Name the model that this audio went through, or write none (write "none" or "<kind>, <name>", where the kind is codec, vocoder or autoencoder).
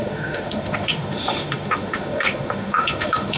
autoencoder, DAC-VAE